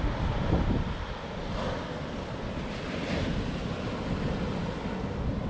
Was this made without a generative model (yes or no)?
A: yes